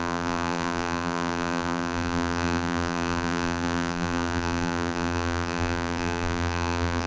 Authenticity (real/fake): fake